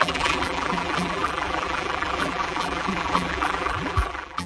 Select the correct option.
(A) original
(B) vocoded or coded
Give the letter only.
B